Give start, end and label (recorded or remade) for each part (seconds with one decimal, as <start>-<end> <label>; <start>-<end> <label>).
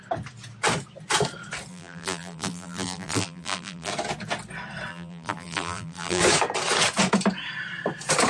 0.0-1.7 recorded; 1.7-3.9 remade; 3.9-4.9 recorded; 4.9-6.2 remade; 6.2-8.3 recorded